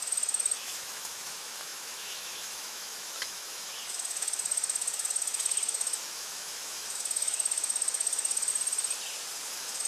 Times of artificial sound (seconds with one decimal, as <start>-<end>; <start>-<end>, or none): 0.0-8.5; 9.5-9.9

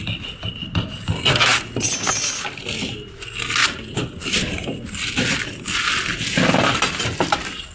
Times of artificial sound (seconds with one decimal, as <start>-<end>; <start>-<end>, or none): none

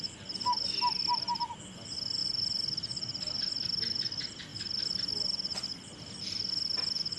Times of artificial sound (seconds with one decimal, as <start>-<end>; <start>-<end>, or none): none

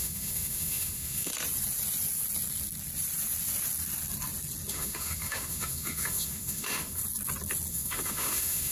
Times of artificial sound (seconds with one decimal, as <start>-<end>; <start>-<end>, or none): 0.0-1.3; 4.7-7.0; 7.7-8.7

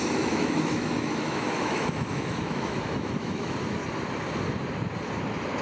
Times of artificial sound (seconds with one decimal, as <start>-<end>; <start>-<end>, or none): 0.0-3.8

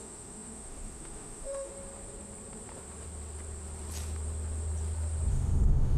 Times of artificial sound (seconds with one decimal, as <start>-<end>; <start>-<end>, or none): 0.0-1.7; 5.3-6.0

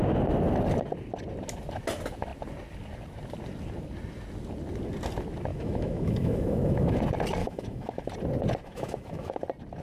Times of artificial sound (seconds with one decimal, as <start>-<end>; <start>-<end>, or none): 5.5-7.0; 7.4-8.1; 8.6-9.4

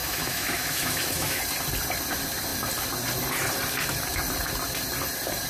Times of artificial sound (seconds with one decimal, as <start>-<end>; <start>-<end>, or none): 0.0-1.4